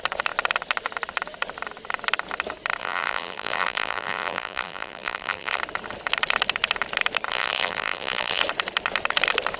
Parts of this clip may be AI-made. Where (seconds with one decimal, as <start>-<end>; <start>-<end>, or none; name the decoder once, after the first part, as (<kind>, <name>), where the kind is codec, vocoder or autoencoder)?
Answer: 2.8-5.6 (vocoder, BigVGAN v2); 7.3-8.4